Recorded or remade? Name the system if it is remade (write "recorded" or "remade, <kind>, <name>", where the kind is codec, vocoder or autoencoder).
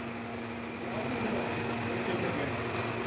recorded